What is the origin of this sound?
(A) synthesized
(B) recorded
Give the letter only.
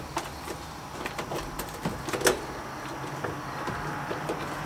B